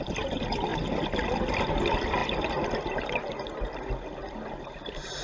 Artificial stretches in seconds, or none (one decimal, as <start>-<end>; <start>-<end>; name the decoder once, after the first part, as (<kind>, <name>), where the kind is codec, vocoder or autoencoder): none